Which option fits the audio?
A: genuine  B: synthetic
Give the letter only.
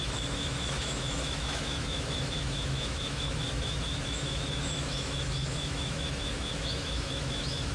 B